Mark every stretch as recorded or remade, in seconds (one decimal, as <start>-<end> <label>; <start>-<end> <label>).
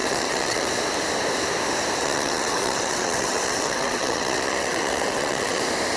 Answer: 0.0-0.7 remade; 0.7-2.0 recorded; 2.0-5.6 remade; 5.6-6.0 recorded